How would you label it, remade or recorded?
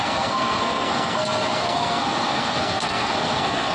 remade